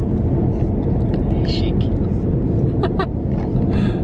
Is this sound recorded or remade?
recorded